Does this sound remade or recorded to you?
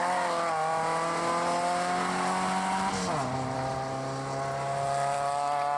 recorded